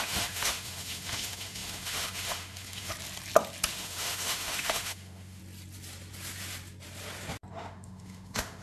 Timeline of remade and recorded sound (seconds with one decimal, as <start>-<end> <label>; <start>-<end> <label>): 0.0-2.9 remade; 2.9-3.7 recorded; 3.7-5.4 remade; 5.4-7.5 recorded; 7.5-8.6 remade